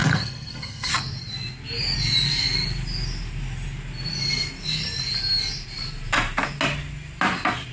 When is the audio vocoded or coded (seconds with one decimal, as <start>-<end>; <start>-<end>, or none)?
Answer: 0.0-0.9